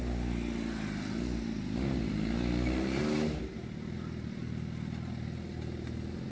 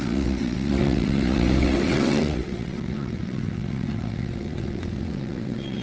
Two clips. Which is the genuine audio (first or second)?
first